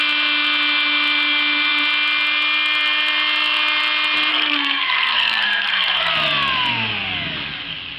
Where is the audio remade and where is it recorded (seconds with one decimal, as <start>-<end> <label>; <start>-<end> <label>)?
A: 0.0-4.3 recorded; 4.3-6.1 remade; 6.1-8.0 recorded